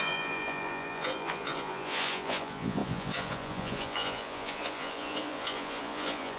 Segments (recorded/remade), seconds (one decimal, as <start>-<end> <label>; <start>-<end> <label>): 0.0-6.4 remade